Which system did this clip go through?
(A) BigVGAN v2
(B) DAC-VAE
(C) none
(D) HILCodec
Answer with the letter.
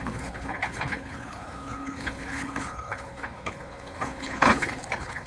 D